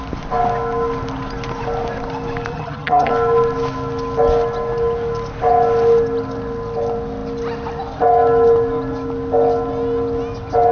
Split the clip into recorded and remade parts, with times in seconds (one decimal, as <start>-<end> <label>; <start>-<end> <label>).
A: 0.0-2.5 recorded; 2.5-3.1 remade; 3.1-10.7 recorded